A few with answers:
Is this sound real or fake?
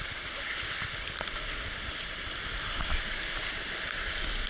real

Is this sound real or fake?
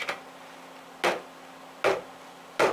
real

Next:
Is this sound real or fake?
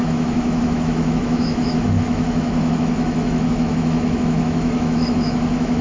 fake